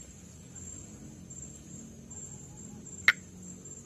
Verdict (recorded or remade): recorded